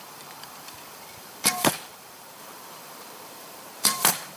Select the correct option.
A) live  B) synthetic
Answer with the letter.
B